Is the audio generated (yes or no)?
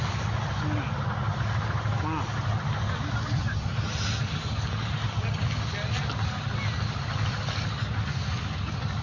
no